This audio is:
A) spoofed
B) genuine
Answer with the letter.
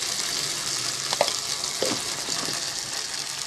B